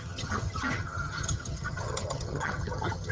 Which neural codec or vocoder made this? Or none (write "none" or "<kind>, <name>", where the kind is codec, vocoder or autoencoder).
vocoder, HiFi-GAN